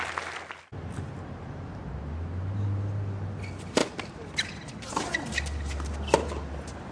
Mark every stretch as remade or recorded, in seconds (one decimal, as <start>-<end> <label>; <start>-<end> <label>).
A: 0.0-6.9 recorded